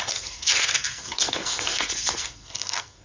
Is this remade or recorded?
remade